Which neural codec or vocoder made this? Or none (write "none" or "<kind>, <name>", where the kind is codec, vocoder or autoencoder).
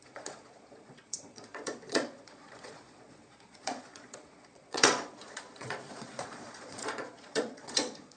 vocoder, Vocos